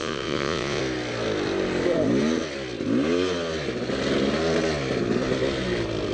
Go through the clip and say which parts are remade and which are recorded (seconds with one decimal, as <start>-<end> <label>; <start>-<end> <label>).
0.0-0.8 remade; 0.8-6.1 recorded